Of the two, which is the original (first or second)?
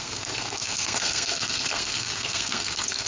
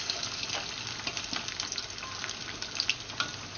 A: second